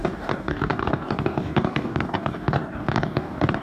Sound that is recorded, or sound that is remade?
remade